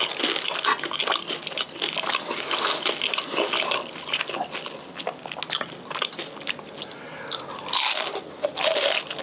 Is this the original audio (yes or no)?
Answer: yes